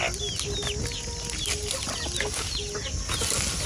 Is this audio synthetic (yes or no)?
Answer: no